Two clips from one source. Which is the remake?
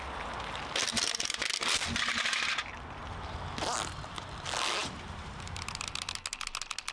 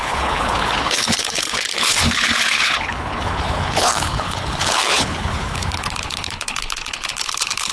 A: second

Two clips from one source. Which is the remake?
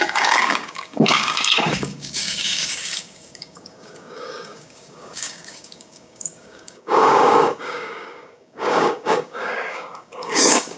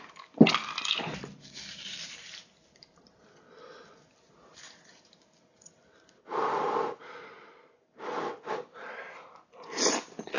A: first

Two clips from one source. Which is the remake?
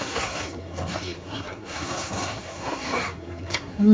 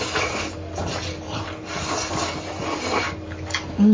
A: first